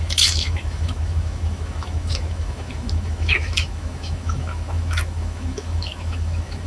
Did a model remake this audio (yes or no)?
yes